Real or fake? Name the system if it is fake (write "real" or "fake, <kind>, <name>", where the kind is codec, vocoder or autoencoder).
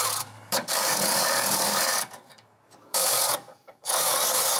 fake, codec, DAC